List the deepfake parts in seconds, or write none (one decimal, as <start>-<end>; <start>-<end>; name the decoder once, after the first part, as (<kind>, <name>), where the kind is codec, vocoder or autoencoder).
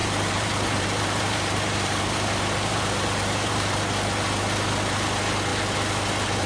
0.0-3.7 (vocoder, BigVGAN v2)